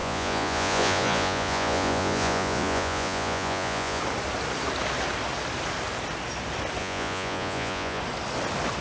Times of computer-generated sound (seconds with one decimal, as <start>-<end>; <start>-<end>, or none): 0.0-4.0; 6.8-8.0